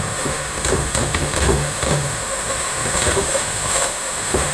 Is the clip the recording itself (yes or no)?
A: no